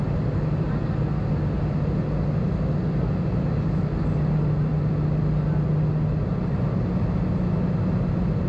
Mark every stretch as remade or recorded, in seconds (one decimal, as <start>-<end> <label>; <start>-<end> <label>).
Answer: 0.0-8.5 recorded